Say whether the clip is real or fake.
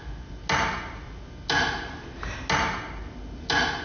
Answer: real